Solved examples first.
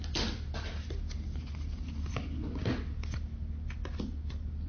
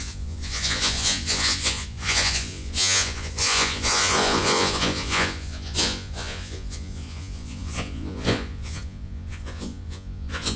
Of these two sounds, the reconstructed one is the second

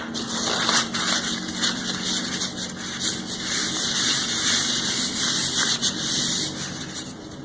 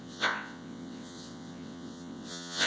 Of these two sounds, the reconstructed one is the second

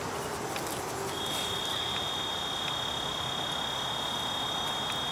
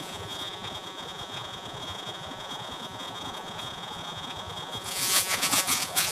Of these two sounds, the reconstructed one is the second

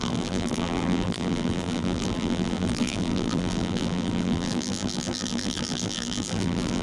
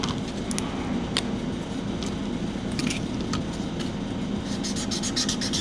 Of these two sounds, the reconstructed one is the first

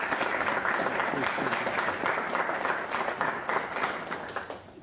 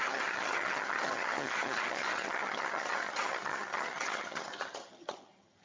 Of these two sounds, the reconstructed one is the second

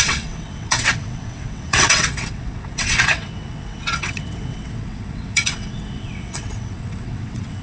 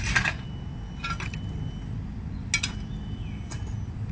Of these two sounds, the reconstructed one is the first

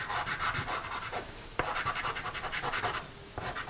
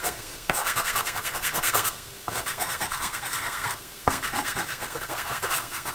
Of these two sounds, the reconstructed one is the second